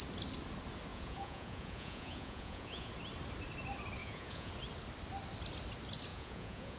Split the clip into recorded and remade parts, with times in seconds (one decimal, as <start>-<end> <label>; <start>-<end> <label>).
0.0-0.9 recorded; 0.9-2.9 remade; 2.9-4.0 recorded; 4.0-4.5 remade; 4.5-6.1 recorded; 6.1-6.8 remade